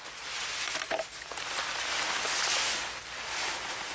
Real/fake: real